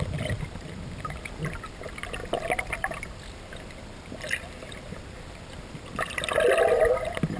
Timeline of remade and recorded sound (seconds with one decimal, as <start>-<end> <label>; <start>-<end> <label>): 0.0-2.2 recorded; 2.2-6.6 remade; 6.6-7.4 recorded